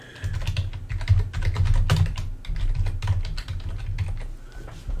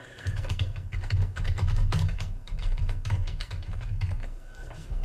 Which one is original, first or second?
first